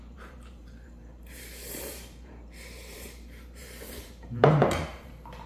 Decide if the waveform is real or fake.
fake